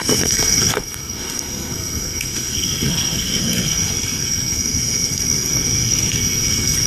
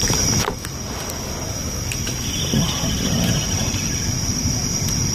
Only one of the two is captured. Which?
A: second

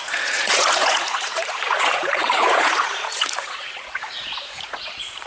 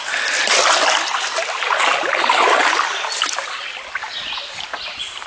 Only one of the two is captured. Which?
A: second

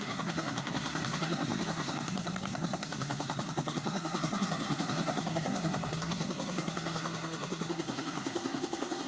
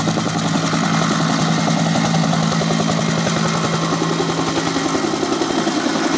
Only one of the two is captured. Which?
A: second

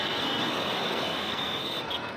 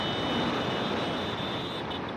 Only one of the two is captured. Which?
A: second